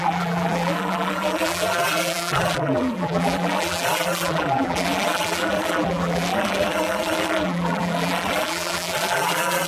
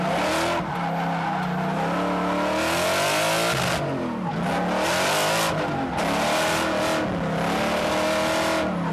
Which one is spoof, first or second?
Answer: first